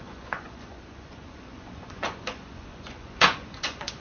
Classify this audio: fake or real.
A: fake